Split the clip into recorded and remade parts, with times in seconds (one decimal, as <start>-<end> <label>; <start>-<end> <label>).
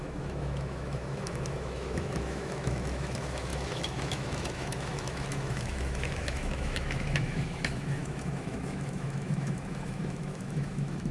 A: 0.0-11.1 remade